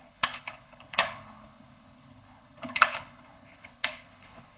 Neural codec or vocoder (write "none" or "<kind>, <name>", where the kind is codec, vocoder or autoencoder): codec, HILCodec